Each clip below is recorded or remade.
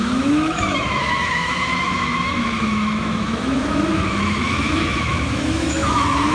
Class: remade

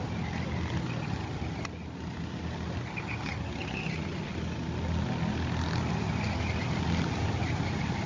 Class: recorded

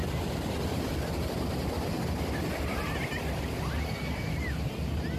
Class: recorded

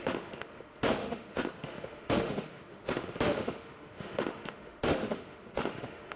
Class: remade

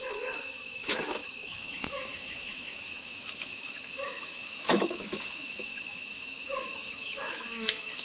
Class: remade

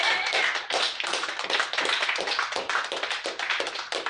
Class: recorded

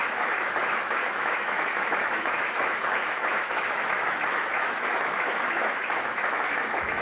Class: remade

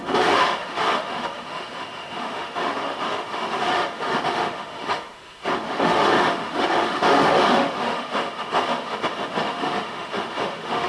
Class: remade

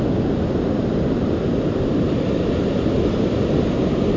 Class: recorded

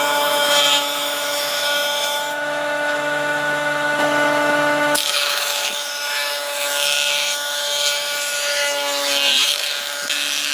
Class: remade